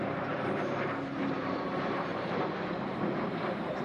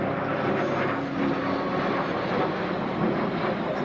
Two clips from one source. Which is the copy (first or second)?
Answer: first